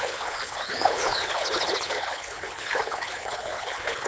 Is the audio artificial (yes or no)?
yes